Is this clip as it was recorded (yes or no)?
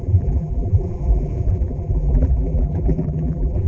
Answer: no